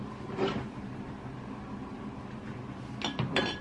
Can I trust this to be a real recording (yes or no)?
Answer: yes